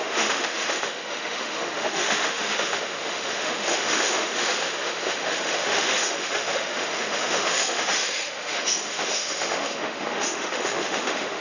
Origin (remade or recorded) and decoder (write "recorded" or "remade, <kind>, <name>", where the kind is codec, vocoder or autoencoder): remade, autoencoder, DAC-VAE